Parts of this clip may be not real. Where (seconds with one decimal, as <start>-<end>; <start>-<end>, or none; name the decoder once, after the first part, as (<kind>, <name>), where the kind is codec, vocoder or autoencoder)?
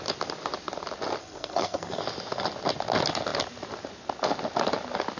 1.2-2.0 (codec, SNAC)